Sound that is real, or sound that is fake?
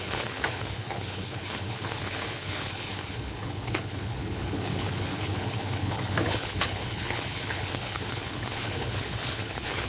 fake